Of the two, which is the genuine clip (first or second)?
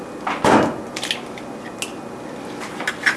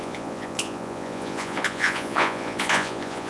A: first